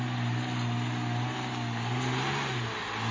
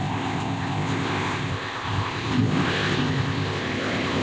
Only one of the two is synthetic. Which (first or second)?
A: second